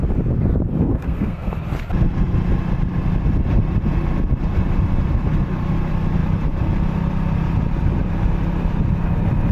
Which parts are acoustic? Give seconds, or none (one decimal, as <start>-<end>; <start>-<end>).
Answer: 0.0-0.8; 1.5-9.5